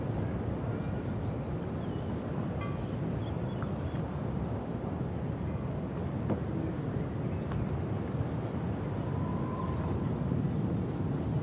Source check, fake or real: real